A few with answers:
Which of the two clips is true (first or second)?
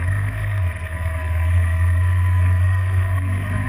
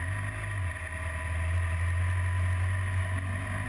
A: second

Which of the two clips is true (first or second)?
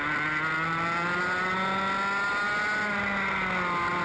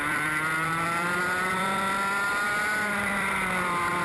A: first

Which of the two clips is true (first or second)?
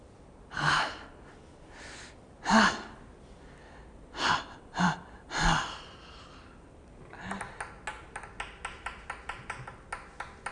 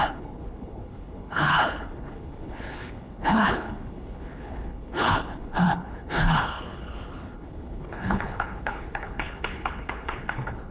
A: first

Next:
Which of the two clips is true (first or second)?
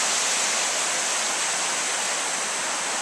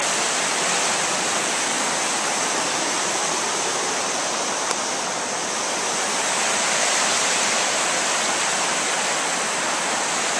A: first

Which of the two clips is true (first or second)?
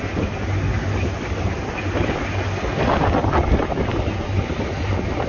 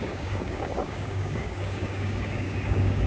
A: first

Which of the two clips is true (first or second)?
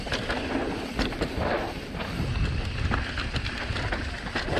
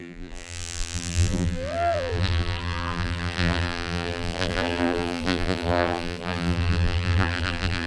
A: first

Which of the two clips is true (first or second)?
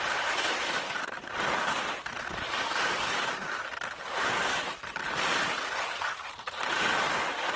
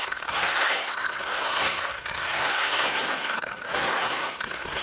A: first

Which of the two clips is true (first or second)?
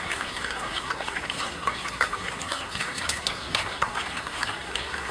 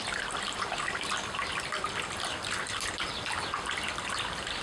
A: second